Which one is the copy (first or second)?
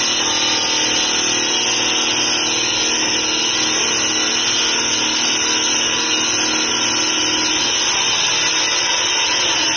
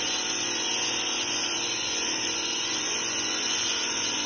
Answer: second